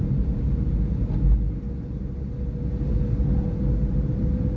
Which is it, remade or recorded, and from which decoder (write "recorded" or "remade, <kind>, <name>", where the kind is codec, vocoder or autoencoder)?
recorded